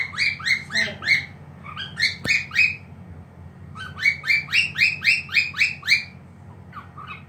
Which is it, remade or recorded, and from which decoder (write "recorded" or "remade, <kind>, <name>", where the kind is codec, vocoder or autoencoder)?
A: recorded